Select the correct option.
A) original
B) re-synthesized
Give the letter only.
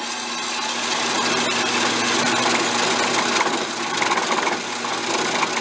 A